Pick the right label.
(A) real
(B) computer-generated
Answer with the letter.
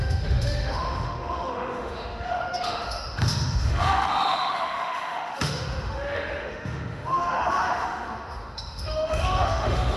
B